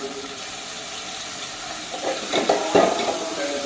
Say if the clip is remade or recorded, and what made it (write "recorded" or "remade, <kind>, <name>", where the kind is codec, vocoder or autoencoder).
recorded